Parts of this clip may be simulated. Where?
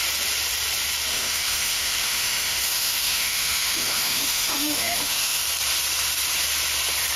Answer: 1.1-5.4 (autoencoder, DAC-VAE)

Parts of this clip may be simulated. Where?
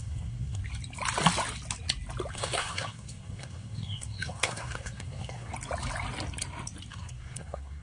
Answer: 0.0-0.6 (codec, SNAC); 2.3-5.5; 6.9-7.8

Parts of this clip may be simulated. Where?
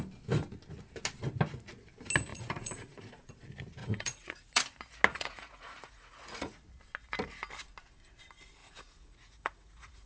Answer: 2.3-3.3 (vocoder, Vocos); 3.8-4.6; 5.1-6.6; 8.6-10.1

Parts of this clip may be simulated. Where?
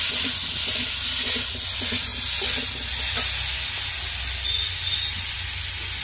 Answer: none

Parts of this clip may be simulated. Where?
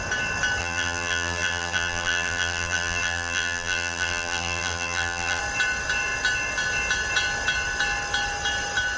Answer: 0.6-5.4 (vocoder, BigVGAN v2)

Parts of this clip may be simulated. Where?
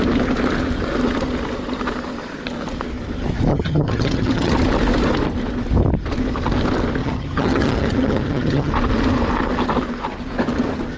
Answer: 3.5-4.5 (vocoder, HiFi-GAN); 7.0-8.7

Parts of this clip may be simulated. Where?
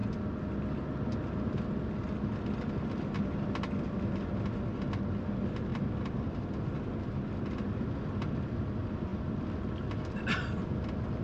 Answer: none